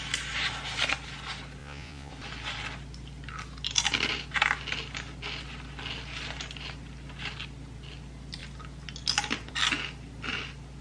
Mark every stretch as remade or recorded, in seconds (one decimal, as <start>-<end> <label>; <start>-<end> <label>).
0.0-1.6 recorded; 1.6-2.1 remade; 2.1-10.8 recorded